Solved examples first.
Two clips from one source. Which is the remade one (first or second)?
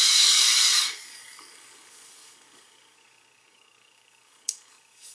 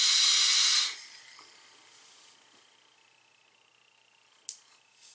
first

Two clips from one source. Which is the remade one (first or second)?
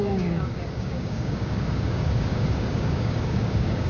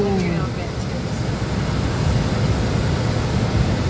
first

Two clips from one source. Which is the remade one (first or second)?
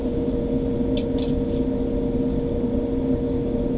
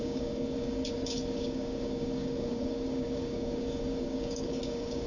second